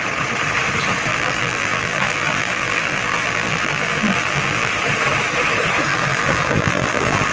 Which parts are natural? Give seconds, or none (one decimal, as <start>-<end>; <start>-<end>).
0.0-1.1; 4.7-5.9